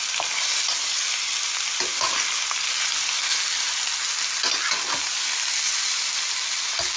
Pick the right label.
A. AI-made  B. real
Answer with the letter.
B